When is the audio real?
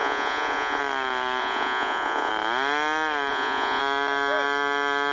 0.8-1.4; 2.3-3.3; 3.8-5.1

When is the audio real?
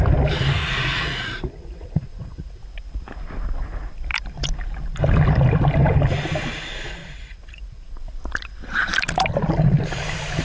0.0-0.6; 2.6-7.0; 8.0-10.4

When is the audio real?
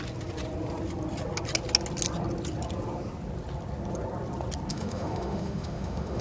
0.0-4.7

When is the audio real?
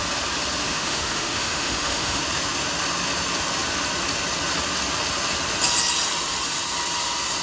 0.0-0.6; 2.2-7.4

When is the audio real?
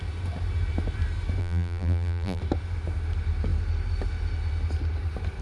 0.0-1.4; 2.4-5.4